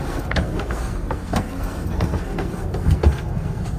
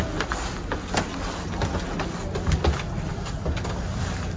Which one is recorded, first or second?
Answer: second